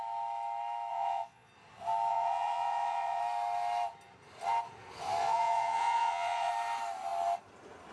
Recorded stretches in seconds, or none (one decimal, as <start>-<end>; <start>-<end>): 0.0-0.9; 1.5-2.1; 3.2-5.2; 6.5-7.9